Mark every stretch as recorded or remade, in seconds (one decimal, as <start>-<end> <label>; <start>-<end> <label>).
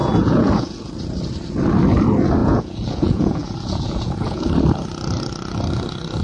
0.0-0.8 remade; 0.8-2.4 recorded; 2.4-4.5 remade; 4.5-6.2 recorded